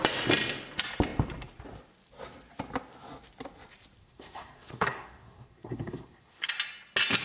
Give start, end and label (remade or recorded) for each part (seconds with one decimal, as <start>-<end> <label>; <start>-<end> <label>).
0.0-4.0 recorded; 4.0-6.5 remade; 6.5-7.2 recorded